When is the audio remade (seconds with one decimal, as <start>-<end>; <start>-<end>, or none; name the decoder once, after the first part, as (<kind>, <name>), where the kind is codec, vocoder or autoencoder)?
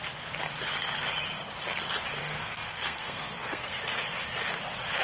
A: 2.2-3.8 (codec, SNAC)